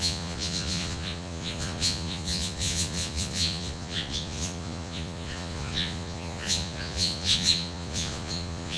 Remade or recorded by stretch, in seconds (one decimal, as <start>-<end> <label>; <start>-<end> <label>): 0.0-8.8 remade